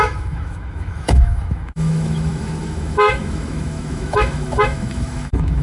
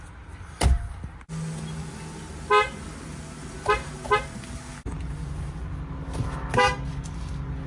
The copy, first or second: first